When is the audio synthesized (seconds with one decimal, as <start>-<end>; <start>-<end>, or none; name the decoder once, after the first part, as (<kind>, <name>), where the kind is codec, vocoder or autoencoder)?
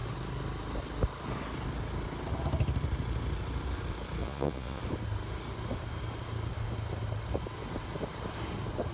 4.2-4.8 (vocoder, Vocos)